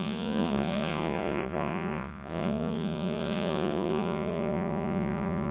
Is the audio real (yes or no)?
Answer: no